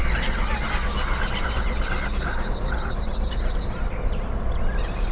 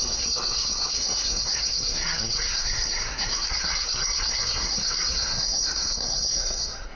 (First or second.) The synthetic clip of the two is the second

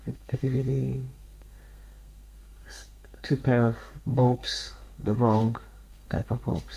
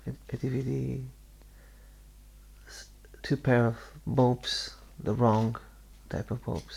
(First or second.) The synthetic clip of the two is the first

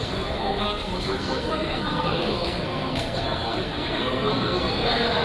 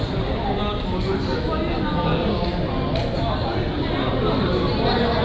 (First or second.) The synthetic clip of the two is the first